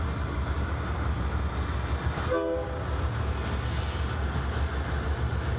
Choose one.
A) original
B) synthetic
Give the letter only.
A